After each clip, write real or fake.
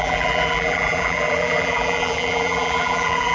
fake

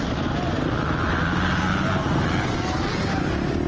real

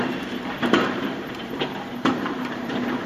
fake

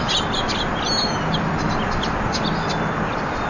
real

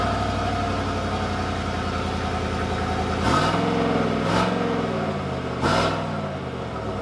real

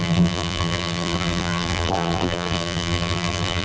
fake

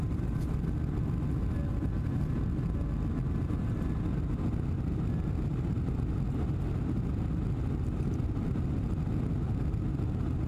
real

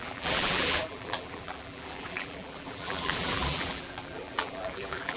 fake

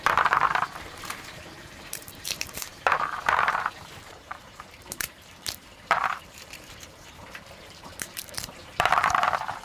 fake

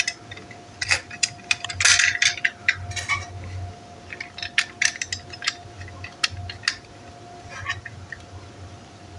real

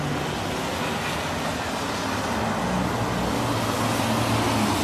real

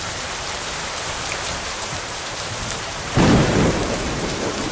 fake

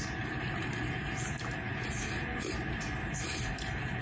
fake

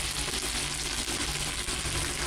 real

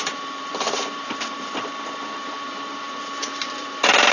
fake